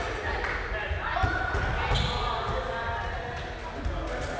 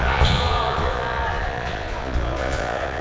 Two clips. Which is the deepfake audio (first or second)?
second